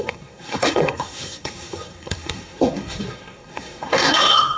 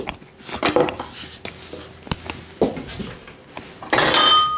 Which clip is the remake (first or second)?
first